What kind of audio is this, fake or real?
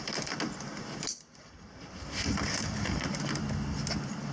real